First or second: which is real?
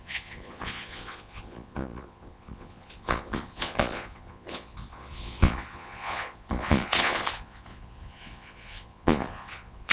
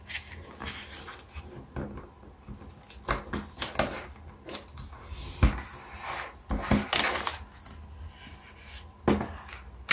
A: second